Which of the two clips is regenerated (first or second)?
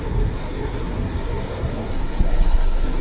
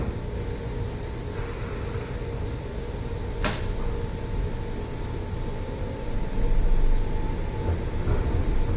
first